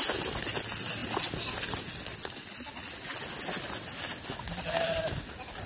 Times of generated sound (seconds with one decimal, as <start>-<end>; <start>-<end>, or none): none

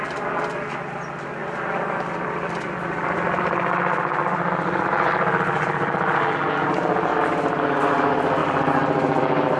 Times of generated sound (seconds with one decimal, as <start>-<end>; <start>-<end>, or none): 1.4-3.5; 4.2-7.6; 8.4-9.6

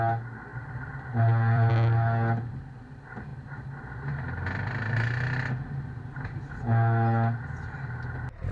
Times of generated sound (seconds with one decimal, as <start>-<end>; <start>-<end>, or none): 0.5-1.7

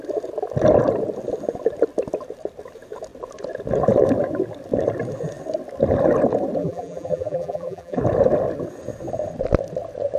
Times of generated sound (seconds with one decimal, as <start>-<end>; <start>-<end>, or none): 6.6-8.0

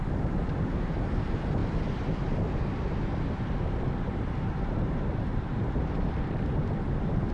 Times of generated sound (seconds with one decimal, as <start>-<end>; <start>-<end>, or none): 1.6-2.4; 5.3-7.3

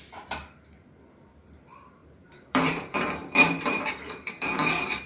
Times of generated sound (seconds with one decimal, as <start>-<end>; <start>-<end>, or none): 2.0-5.1

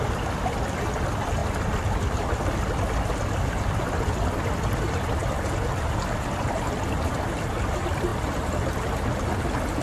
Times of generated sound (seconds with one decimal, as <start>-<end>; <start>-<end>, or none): none